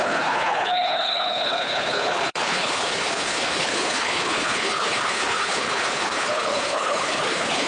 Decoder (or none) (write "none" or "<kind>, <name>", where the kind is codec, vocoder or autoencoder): codec, HILCodec